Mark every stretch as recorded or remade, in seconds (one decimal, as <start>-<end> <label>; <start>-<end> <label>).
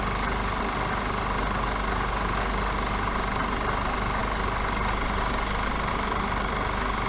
0.0-7.1 recorded